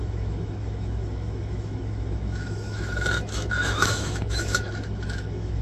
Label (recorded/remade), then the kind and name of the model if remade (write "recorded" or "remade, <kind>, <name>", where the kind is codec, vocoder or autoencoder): remade, autoencoder, DAC-VAE